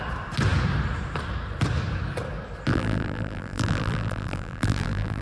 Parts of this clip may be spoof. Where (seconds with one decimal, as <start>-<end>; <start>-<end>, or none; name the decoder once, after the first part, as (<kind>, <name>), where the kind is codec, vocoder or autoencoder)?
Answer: 2.7-5.2 (vocoder, BigVGAN v2)